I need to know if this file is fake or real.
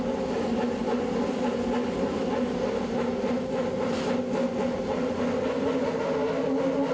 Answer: real